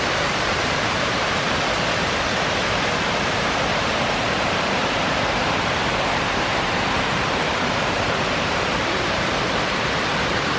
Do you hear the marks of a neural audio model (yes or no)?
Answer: yes